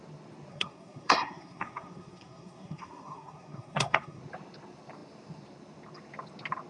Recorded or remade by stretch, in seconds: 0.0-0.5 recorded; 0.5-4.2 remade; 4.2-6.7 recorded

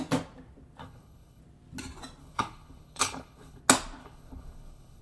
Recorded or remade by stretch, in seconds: 0.0-0.8 recorded; 0.8-1.4 remade; 1.4-2.2 recorded; 2.2-3.6 remade; 3.6-4.0 recorded; 4.0-5.0 remade

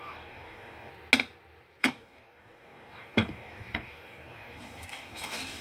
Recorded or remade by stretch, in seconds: 0.0-0.9 remade; 0.9-1.8 recorded; 1.8-5.6 remade

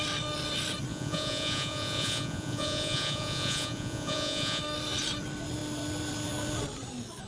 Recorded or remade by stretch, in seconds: 0.0-0.9 recorded; 0.9-4.6 remade; 4.6-7.3 recorded

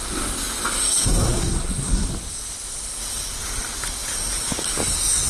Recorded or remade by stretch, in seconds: 0.0-0.9 recorded; 0.9-2.1 remade; 2.1-5.3 recorded

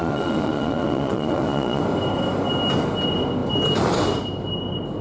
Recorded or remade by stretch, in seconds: 0.0-1.8 remade; 1.8-5.0 recorded

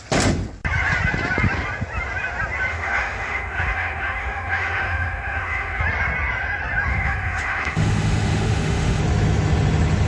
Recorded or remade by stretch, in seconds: 0.0-2.7 recorded; 2.7-5.8 remade; 5.8-6.9 recorded; 6.9-9.0 remade; 9.0-10.1 recorded

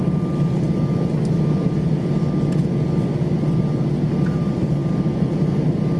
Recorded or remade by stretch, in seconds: 0.0-6.0 recorded